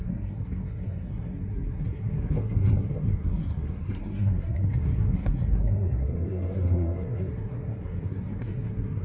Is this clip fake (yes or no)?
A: yes